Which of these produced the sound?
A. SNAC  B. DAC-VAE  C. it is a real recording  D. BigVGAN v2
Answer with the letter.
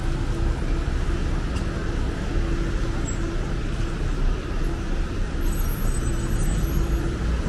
C